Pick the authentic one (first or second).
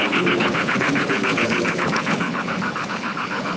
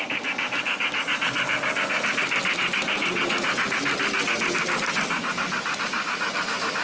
second